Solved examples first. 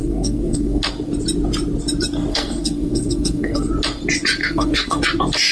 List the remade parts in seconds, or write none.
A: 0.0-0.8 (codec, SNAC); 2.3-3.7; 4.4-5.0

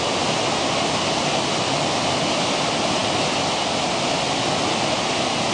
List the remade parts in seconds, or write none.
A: none

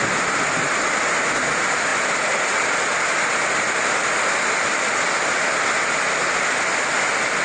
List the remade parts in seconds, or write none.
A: none

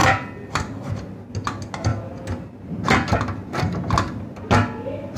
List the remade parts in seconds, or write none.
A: none

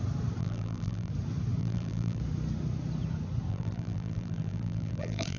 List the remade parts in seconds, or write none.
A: 0.4-1.1 (vocoder, BigVGAN v2); 1.6-2.2; 3.5-5.4

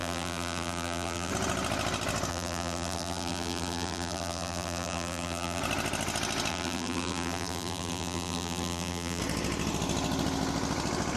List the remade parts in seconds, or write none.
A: 0.0-1.3 (vocoder, BigVGAN v2); 2.3-5.6; 6.5-9.2

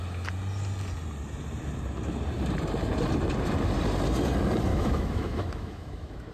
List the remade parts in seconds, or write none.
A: 4.7-6.3 (autoencoder, DAC-VAE)